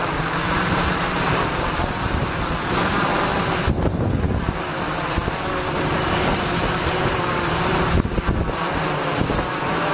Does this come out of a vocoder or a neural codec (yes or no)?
yes